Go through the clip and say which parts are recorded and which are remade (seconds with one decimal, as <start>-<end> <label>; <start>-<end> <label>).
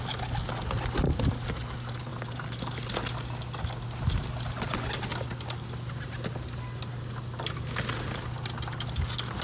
0.0-9.4 recorded